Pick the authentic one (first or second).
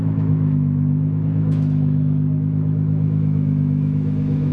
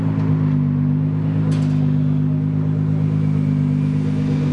second